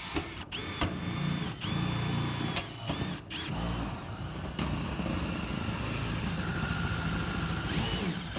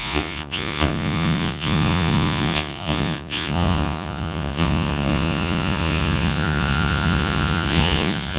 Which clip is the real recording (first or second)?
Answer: first